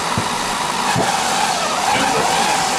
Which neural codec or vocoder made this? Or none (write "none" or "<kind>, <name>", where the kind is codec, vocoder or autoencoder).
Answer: none